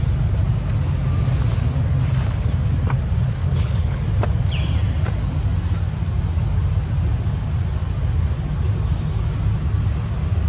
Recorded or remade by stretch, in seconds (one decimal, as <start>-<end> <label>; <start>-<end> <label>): 0.0-3.4 recorded; 3.4-4.0 remade; 4.0-10.5 recorded